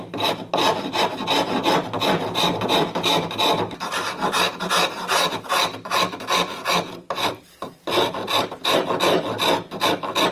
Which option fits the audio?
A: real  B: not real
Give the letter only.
A